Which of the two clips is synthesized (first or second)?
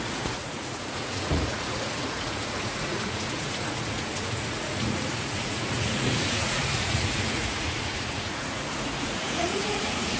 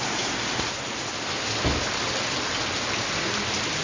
first